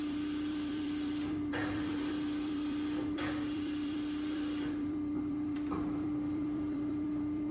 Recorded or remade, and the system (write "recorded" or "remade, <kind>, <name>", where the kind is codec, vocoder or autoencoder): remade, vocoder, BigVGAN v2